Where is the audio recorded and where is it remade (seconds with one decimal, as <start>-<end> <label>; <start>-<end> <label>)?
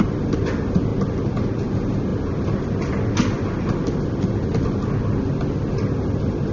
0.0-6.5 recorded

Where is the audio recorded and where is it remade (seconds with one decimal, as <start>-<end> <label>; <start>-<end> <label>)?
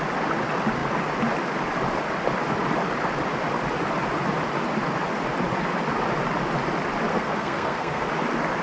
0.0-7.1 recorded; 7.1-8.1 remade; 8.1-8.6 recorded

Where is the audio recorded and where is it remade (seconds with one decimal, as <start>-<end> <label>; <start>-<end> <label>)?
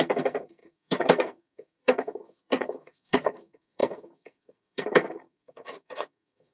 0.0-6.5 remade